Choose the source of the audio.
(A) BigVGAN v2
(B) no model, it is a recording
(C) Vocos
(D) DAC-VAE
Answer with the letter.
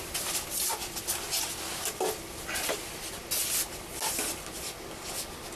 B